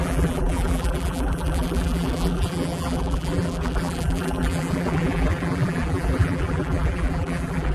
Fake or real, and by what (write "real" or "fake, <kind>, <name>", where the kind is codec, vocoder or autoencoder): fake, vocoder, BigVGAN v2